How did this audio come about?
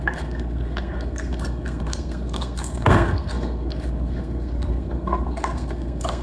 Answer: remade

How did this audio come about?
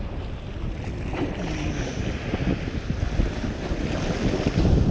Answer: recorded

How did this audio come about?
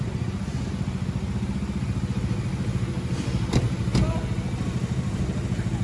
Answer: recorded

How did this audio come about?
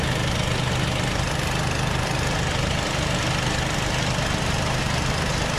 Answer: recorded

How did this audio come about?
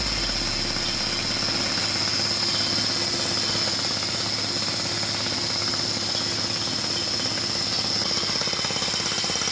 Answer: recorded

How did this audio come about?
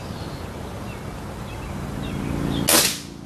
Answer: recorded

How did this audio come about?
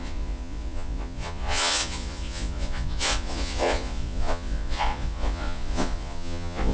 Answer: remade